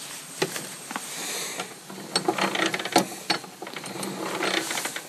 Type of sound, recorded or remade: recorded